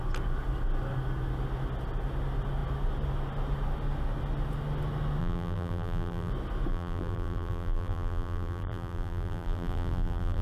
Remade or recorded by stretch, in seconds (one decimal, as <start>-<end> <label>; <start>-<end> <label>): 0.0-5.2 recorded; 5.2-6.3 remade; 6.3-6.7 recorded; 6.7-10.4 remade